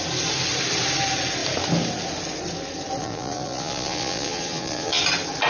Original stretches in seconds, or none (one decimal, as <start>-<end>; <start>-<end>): 0.0-3.0; 5.0-5.5